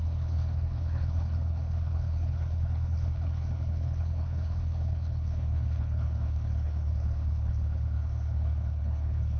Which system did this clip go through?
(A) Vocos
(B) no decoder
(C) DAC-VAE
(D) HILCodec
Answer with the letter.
D